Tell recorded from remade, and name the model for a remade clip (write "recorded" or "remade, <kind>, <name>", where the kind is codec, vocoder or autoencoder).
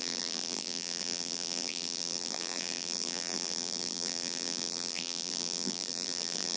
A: remade, vocoder, BigVGAN v2